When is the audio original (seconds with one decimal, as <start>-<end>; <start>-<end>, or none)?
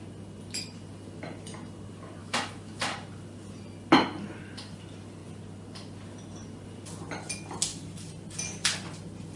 0.0-2.2; 2.8-9.4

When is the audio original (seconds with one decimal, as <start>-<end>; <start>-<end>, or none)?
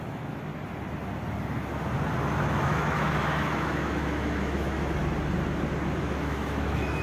0.5-2.4; 5.0-6.0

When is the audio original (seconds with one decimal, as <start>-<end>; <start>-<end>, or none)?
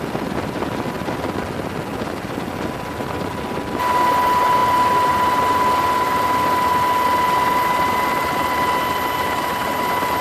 0.0-10.2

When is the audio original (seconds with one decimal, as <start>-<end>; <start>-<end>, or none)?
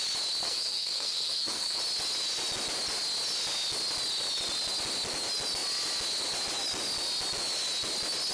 0.0-0.4; 1.8-8.3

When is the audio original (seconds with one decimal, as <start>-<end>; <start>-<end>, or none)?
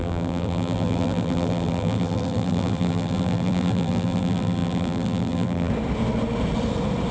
5.7-7.1